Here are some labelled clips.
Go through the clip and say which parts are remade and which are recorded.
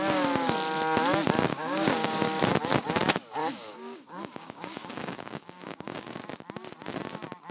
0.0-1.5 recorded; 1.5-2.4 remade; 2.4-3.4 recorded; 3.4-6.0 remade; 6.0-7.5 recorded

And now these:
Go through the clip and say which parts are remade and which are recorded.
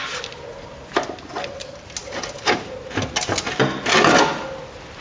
0.0-5.0 recorded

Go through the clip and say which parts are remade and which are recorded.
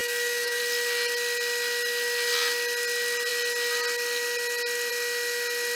0.0-0.6 remade; 0.6-5.8 recorded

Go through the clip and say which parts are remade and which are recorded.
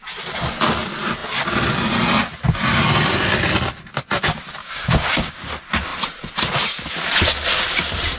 0.0-4.6 recorded; 4.6-5.5 remade; 5.5-8.2 recorded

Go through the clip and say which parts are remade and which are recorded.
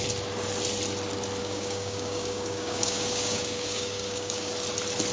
0.0-1.4 recorded; 1.4-4.5 remade; 4.5-5.1 recorded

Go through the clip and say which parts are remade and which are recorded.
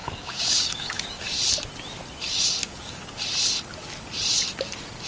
0.0-1.4 remade; 1.4-2.6 recorded; 2.6-3.1 remade; 3.1-5.1 recorded